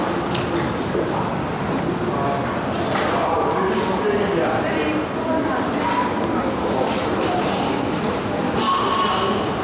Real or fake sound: real